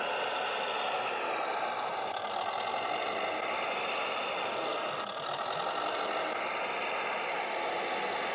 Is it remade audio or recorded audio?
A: recorded